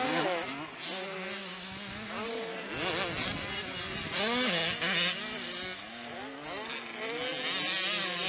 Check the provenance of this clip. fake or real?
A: real